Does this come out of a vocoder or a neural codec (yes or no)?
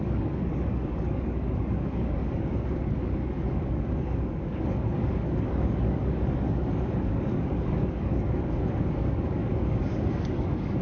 yes